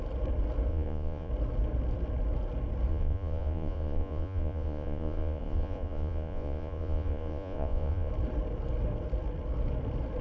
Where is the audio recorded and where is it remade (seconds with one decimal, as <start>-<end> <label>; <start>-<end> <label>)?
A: 0.0-0.7 recorded; 0.7-1.3 remade; 1.3-2.9 recorded; 2.9-8.1 remade; 8.1-10.2 recorded

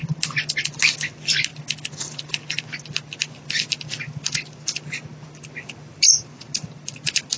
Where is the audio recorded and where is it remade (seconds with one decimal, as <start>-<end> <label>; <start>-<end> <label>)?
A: 0.0-7.4 recorded

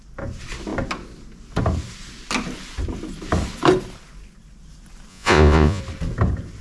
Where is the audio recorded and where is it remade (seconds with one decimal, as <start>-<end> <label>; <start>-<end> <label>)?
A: 0.0-5.1 recorded; 5.1-5.8 remade; 5.8-6.6 recorded

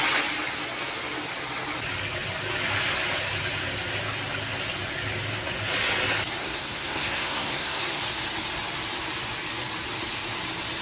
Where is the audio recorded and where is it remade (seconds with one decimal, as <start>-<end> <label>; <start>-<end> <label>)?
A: 0.0-6.4 recorded; 6.4-8.0 remade; 8.0-10.8 recorded